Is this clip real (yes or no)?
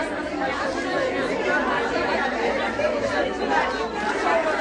yes